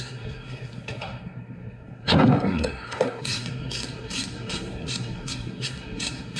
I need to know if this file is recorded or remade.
remade